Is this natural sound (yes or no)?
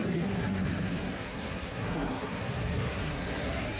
no